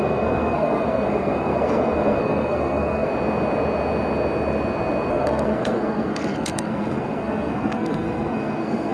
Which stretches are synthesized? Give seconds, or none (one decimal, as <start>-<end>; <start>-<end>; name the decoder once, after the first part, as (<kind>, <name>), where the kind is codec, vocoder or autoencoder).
0.0-3.1 (codec, SNAC); 5.1-8.9